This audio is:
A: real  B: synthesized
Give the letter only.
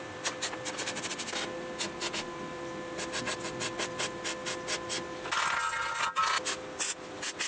A